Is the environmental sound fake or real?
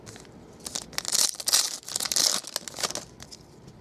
real